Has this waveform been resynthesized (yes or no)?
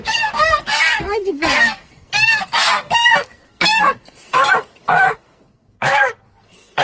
yes